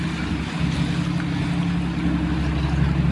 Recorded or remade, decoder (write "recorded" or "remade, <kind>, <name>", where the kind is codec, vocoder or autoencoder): recorded